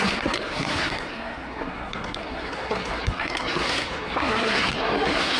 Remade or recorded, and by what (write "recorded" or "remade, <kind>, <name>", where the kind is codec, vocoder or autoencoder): remade, codec, SNAC